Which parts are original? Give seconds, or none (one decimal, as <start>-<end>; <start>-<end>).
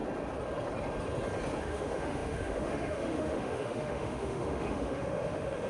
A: 0.0-1.6